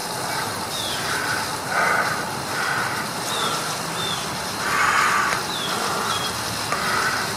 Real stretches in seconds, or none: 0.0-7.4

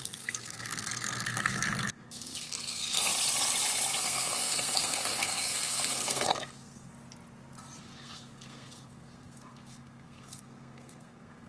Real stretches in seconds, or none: 3.1-4.0; 6.9-7.8

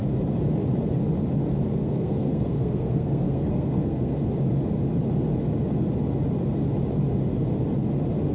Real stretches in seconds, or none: 0.0-1.8; 4.2-8.3

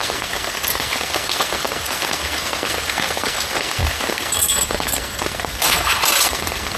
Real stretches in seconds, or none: none

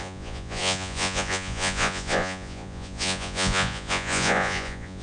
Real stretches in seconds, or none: none

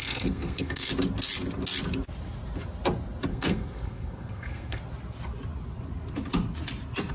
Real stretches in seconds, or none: 0.9-3.3; 4.8-7.1

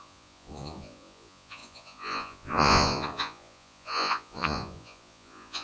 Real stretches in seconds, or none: none